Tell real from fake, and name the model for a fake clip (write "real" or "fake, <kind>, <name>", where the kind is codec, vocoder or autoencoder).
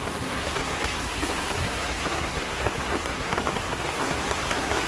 fake, codec, SNAC